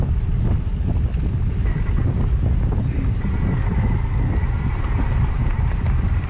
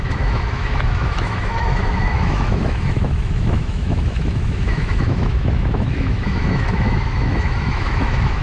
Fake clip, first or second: second